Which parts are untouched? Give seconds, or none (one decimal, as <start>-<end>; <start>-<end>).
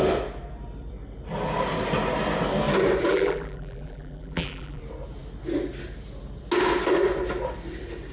0.0-3.1; 4.8-8.1